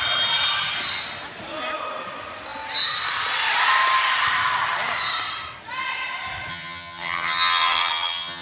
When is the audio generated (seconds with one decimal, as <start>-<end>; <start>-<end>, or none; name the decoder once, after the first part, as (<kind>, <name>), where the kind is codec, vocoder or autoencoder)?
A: 6.5-8.4 (vocoder, HiFi-GAN)